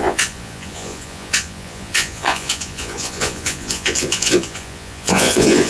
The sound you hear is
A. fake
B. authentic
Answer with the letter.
A